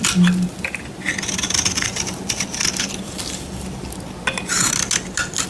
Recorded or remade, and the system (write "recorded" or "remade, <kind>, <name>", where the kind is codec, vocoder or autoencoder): recorded